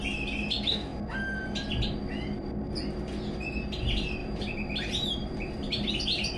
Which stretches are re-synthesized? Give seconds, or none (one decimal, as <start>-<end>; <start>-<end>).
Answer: 4.2-5.9